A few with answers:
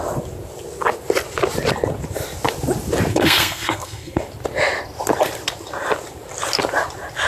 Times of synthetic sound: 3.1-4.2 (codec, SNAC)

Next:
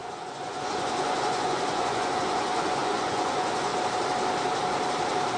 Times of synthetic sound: 0.0-3.7 (vocoder, Vocos)